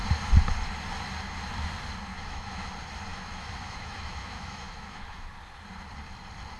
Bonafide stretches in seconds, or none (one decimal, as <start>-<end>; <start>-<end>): 0.0-2.1; 2.7-3.1; 5.3-6.6